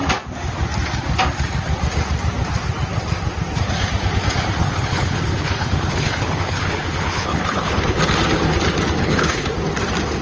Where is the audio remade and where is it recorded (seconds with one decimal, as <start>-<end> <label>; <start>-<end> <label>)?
0.0-4.6 recorded; 4.6-8.0 remade; 8.0-9.0 recorded; 9.0-9.5 remade; 9.5-10.2 recorded